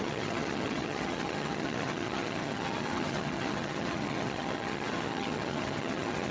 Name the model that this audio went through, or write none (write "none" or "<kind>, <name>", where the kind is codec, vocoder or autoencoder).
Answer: vocoder, HiFi-GAN